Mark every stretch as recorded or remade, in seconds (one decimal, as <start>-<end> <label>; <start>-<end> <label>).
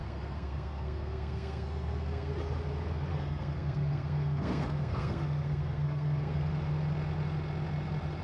0.0-2.3 remade; 2.3-3.1 recorded; 3.1-6.5 remade; 6.5-8.2 recorded